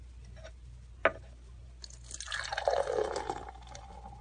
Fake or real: real